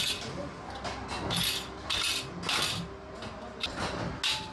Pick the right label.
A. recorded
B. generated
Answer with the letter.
A